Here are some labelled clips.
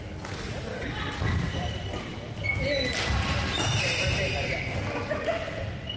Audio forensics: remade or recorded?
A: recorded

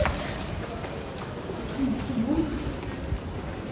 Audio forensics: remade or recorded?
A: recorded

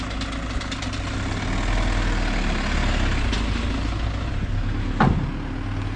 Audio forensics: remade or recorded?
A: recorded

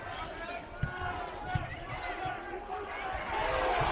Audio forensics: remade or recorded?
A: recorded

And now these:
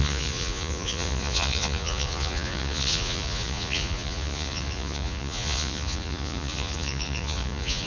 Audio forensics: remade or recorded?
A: remade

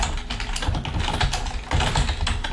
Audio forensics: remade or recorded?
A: recorded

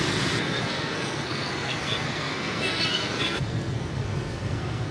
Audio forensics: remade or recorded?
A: remade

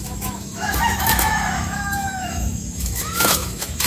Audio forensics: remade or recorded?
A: remade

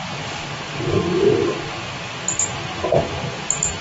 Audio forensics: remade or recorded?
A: recorded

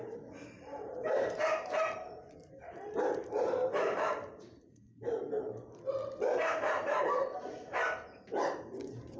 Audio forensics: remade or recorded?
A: remade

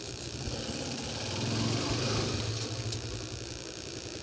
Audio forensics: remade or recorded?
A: recorded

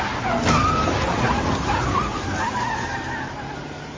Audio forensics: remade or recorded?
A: recorded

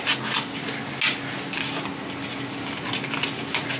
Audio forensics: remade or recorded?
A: recorded